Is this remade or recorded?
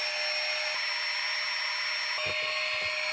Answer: recorded